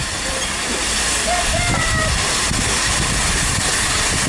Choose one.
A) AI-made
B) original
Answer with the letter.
B